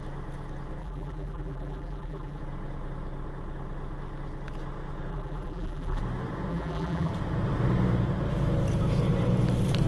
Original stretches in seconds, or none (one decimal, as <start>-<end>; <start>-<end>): 0.0-0.8; 2.4-5.1; 6.0-6.5; 7.1-9.9